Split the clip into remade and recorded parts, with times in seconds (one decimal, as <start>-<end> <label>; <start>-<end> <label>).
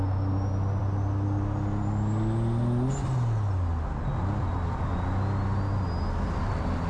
0.0-6.9 recorded